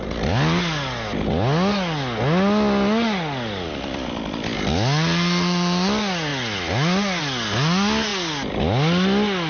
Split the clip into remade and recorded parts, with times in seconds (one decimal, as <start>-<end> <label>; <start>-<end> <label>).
0.0-9.5 recorded